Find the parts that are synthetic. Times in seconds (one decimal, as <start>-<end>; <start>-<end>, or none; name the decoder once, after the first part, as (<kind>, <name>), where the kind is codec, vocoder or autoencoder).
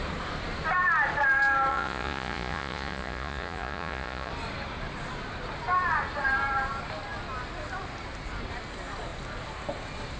1.7-4.3 (vocoder, Vocos)